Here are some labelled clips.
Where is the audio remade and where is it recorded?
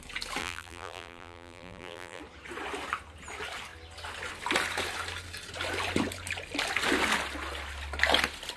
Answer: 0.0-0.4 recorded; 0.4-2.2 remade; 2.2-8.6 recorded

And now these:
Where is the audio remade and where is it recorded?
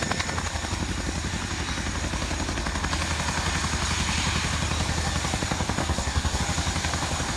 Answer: 0.0-5.8 recorded; 5.8-6.4 remade; 6.4-7.4 recorded